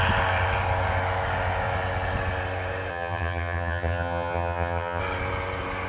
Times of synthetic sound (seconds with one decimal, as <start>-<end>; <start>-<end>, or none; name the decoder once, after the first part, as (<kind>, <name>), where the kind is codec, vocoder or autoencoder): 2.9-5.0 (vocoder, HiFi-GAN)